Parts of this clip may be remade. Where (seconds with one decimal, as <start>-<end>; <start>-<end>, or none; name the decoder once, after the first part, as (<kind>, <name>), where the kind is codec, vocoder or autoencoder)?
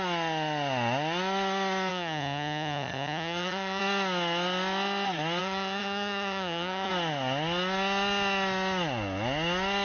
1.9-3.8 (vocoder, HiFi-GAN); 5.4-6.9